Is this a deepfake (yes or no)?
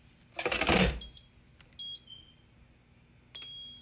no